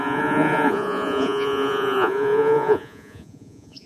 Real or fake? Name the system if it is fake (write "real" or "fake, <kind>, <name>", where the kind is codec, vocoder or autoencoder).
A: fake, vocoder, Vocos